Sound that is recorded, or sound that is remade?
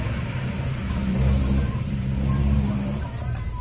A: remade